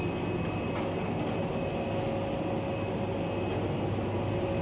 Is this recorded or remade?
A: recorded